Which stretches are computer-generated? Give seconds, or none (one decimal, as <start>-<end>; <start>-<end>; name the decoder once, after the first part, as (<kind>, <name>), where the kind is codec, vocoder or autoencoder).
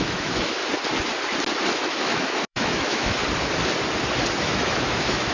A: 0.0-0.6 (autoencoder, DAC-VAE); 1.7-3.2; 4.4-5.3